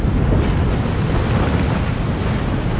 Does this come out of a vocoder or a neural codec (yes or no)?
no